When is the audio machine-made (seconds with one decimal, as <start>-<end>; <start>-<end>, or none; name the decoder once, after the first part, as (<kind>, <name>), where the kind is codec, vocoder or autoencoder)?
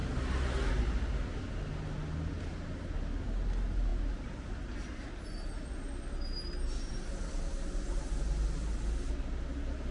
none